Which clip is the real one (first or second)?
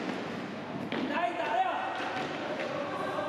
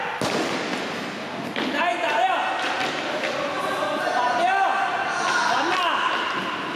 second